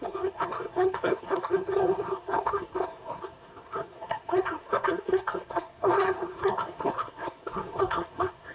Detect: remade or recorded remade